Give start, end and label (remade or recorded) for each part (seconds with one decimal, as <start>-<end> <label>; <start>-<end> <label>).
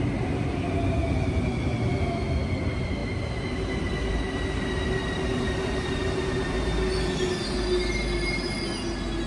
0.0-1.9 recorded; 1.9-2.4 remade; 2.4-9.3 recorded